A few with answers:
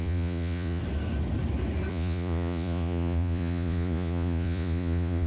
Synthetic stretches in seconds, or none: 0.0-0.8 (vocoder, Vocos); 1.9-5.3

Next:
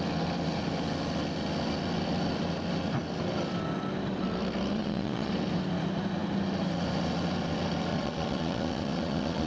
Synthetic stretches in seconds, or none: 4.7-5.3 (vocoder, Vocos); 7.9-9.5

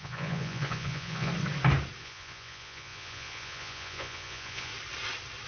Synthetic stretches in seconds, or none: 0.0-1.3 (vocoder, Vocos); 2.0-4.7

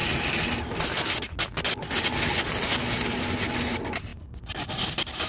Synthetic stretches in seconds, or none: none

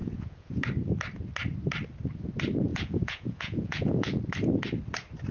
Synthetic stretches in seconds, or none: 0.0-0.6 (vocoder, Vocos); 2.7-4.2

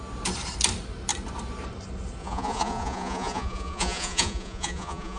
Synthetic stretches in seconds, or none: 2.2-5.2 (vocoder, Vocos)

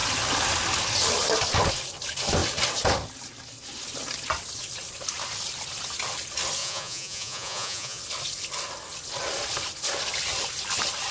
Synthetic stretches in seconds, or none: 6.6-8.0 (vocoder, Vocos)